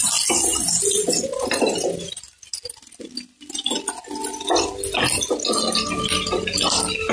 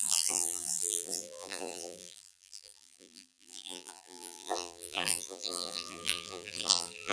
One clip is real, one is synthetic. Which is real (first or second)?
first